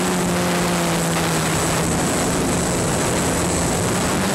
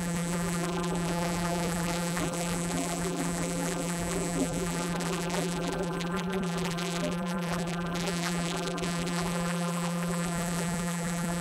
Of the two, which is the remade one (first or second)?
second